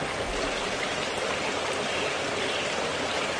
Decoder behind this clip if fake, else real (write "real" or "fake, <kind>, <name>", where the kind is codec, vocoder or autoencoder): real